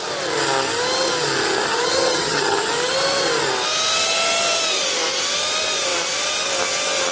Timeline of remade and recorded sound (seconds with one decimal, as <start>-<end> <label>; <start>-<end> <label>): 0.0-1.7 recorded; 1.7-2.7 remade; 2.7-7.1 recorded